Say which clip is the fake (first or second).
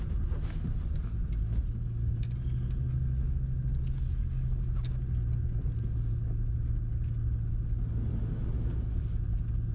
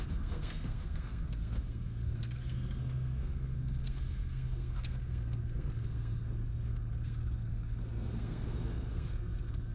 second